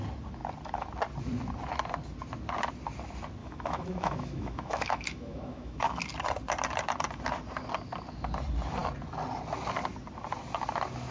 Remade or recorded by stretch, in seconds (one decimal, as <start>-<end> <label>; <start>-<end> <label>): 0.0-3.4 recorded; 3.4-6.0 remade; 6.0-11.1 recorded

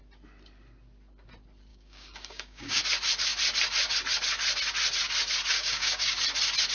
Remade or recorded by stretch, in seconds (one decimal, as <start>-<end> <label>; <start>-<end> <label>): 0.0-1.7 recorded; 1.7-2.8 remade; 2.8-5.5 recorded; 5.5-6.2 remade; 6.2-6.7 recorded

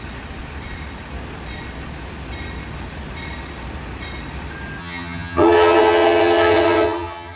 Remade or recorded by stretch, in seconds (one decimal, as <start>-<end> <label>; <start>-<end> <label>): 0.0-4.8 recorded; 4.8-7.4 remade

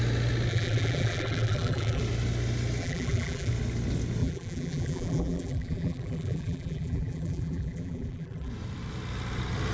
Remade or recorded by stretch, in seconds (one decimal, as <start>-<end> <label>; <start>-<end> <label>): 0.0-0.5 recorded; 0.5-2.0 remade; 2.0-2.8 recorded; 2.8-3.5 remade; 3.5-4.2 recorded; 4.2-8.5 remade; 8.5-9.7 recorded

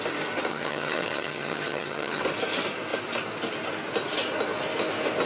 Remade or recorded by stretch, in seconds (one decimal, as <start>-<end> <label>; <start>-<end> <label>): 0.0-0.5 recorded; 0.5-2.2 remade; 2.2-5.3 recorded

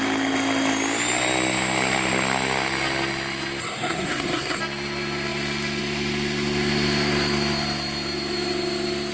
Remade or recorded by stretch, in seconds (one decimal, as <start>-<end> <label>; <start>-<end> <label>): 0.0-3.6 recorded; 3.6-4.6 remade; 4.6-9.1 recorded

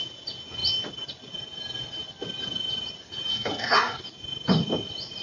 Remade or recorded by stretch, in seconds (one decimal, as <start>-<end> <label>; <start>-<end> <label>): 0.0-3.3 recorded; 3.3-4.0 remade; 4.0-5.2 recorded